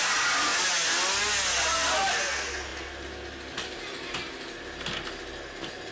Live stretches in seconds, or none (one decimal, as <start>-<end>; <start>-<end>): 0.0-5.9